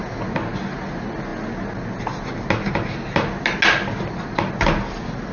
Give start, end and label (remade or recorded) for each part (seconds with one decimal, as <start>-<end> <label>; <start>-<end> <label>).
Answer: 0.0-5.3 recorded

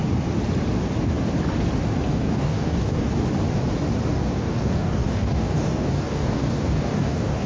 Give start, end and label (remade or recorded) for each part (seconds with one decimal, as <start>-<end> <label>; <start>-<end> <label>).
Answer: 0.0-2.1 recorded; 2.1-3.1 remade; 3.1-4.1 recorded; 4.1-7.5 remade

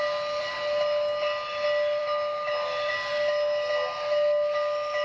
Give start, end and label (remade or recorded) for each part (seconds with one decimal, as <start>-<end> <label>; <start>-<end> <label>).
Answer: 0.0-5.0 recorded

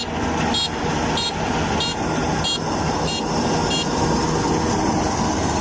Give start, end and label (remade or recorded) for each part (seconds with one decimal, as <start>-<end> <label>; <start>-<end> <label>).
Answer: 0.0-5.6 recorded

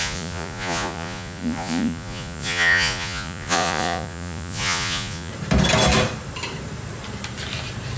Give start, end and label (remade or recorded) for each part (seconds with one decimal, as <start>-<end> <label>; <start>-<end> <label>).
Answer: 0.0-5.3 remade; 5.3-8.0 recorded

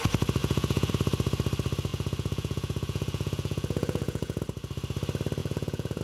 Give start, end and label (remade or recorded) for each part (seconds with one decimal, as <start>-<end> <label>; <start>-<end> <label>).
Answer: 0.0-0.4 recorded; 0.4-0.9 remade; 0.9-1.9 recorded; 1.9-4.4 remade; 4.4-5.4 recorded; 5.4-6.0 remade